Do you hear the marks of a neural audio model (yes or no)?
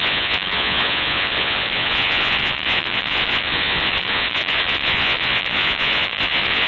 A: yes